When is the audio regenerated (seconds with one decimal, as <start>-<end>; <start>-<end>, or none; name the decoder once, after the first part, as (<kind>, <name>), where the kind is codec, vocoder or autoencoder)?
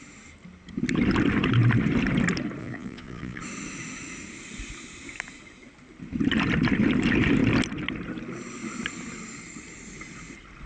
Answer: 2.6-3.4 (vocoder, Vocos)